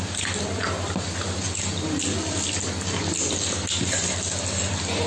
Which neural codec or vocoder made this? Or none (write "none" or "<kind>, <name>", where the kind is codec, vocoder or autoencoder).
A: none